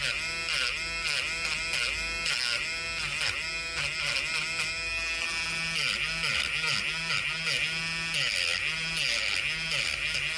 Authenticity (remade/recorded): recorded